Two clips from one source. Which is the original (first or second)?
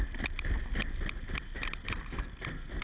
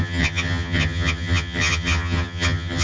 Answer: first